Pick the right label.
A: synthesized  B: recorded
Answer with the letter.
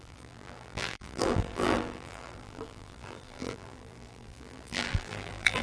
A